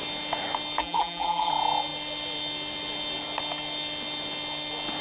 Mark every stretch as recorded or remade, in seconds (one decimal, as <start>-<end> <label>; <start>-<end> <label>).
0.0-0.8 recorded; 0.8-1.5 remade; 1.5-5.0 recorded